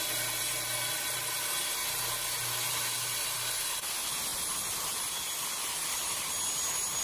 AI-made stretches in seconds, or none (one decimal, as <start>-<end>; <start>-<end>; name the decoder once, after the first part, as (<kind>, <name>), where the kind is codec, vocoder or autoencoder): none